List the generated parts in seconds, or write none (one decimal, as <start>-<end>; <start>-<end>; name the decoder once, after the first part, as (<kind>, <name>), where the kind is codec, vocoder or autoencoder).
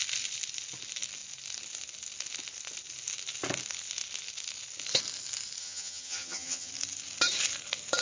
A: 5.6-6.7 (vocoder, HiFi-GAN)